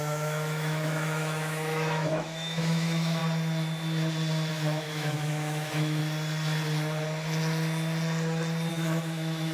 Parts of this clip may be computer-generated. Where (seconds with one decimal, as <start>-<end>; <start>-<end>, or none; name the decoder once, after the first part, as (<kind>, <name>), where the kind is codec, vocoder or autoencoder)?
0.0-3.2 (autoencoder, DAC-VAE); 4.5-6.0; 8.7-9.5